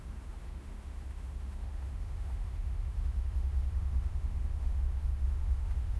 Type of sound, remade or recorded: remade